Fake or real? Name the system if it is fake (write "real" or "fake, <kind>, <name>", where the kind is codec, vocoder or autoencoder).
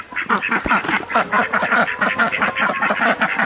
real